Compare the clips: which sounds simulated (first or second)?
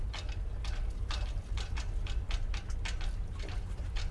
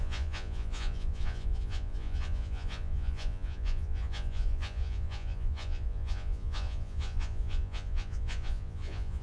second